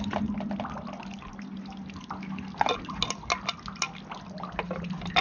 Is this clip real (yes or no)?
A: yes